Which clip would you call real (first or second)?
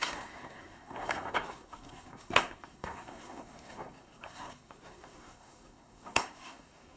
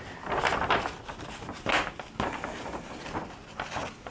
second